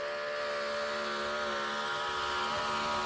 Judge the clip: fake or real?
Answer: real